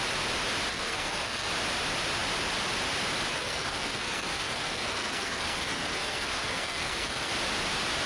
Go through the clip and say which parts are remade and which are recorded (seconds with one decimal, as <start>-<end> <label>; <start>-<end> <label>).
0.0-0.7 recorded; 0.7-1.5 remade; 1.5-3.3 recorded; 3.3-7.3 remade; 7.3-8.1 recorded

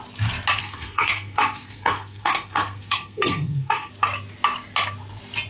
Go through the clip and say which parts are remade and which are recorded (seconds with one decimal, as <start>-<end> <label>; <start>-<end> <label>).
0.0-0.6 recorded; 0.6-3.9 remade; 3.9-5.5 recorded

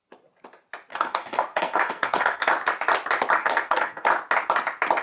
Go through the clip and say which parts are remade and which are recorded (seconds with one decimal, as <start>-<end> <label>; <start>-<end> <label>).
0.0-0.9 recorded; 0.9-2.5 remade; 2.5-3.4 recorded; 3.4-4.1 remade; 4.1-5.0 recorded

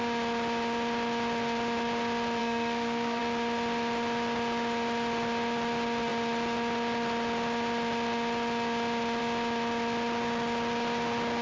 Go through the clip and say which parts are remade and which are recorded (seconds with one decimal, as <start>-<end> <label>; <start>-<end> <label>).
0.0-2.4 recorded; 2.4-3.2 remade; 3.2-11.4 recorded

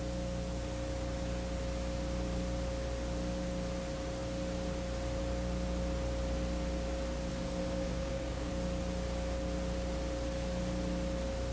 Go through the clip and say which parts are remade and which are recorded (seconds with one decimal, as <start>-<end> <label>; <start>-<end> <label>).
0.0-7.3 recorded; 7.3-8.5 remade; 8.5-11.5 recorded